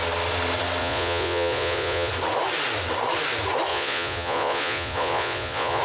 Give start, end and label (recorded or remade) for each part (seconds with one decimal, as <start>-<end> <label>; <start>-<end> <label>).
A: 0.0-0.8 recorded; 0.8-2.1 remade; 2.1-3.7 recorded; 3.7-5.8 remade